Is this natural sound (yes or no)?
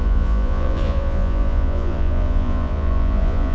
no